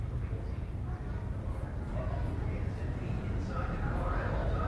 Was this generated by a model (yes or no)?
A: no